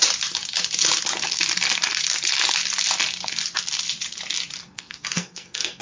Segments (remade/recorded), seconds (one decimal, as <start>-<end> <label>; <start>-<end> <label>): 0.0-4.6 recorded; 4.6-5.8 remade